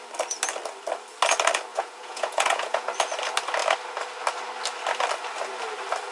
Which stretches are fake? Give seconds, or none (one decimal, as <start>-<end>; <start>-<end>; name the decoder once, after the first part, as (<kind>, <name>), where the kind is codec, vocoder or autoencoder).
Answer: 1.7-2.9 (vocoder, Vocos)